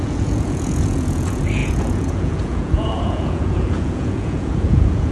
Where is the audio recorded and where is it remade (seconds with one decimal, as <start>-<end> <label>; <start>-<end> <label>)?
0.0-5.1 remade